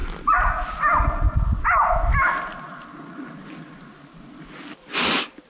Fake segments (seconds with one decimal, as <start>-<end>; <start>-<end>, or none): none

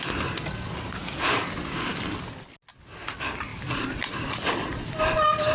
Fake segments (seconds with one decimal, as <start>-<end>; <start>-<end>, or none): 3.5-4.5

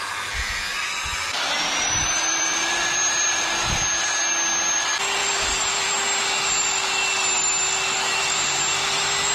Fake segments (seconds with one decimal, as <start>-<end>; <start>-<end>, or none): 0.7-3.5; 5.2-5.9

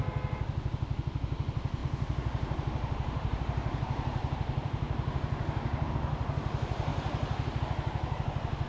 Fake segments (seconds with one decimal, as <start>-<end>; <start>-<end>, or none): 1.8-5.9; 6.9-7.6

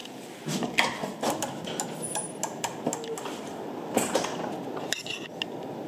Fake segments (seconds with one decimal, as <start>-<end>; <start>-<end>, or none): none

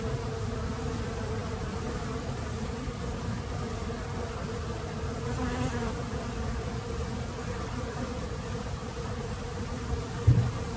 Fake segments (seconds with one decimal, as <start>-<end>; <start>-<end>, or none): 6.7-9.8

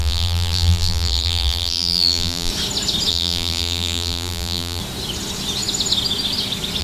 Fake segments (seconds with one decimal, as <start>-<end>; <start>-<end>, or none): 0.0-2.5; 3.1-4.8

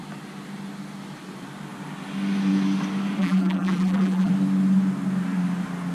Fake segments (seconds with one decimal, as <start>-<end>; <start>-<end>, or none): 3.2-4.3